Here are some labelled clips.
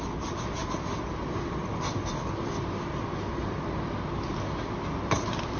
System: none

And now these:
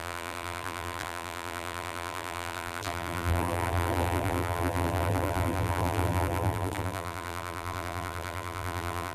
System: vocoder, BigVGAN v2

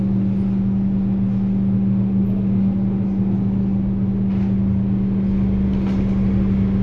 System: none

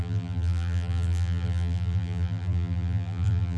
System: vocoder, BigVGAN v2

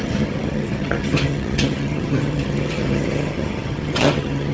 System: vocoder, HiFi-GAN